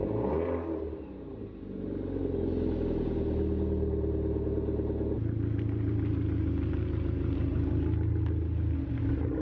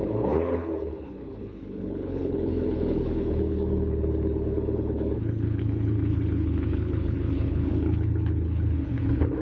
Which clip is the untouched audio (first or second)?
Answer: first